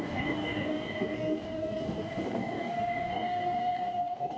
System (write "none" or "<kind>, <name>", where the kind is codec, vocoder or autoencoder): codec, DAC